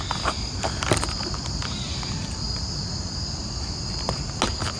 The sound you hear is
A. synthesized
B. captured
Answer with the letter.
B